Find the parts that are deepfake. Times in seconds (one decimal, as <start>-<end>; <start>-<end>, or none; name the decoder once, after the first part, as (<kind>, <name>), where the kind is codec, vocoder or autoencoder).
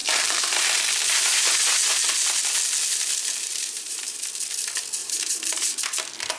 0.0-0.9 (vocoder, BigVGAN v2); 3.4-4.2; 5.0-5.8